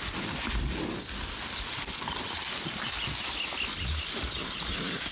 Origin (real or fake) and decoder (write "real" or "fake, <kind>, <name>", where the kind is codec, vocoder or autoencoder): real